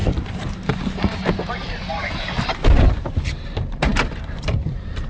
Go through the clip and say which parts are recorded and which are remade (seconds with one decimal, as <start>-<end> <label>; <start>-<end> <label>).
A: 0.0-5.1 remade